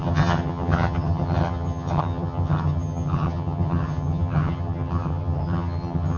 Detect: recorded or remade remade